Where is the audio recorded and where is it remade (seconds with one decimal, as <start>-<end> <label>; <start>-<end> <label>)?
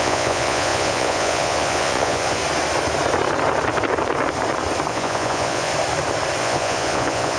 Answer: 0.0-2.4 remade; 2.4-4.9 recorded; 4.9-5.7 remade; 5.7-6.4 recorded; 6.4-7.4 remade